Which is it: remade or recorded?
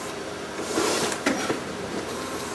remade